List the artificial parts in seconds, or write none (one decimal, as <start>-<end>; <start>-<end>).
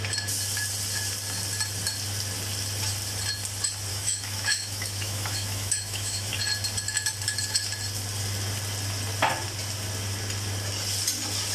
3.9-6.3